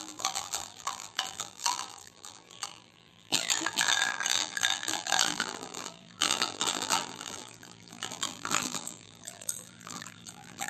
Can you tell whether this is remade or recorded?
remade